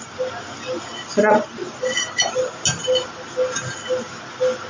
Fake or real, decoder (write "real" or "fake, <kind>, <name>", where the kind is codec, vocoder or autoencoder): real